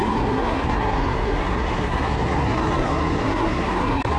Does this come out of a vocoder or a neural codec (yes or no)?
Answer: yes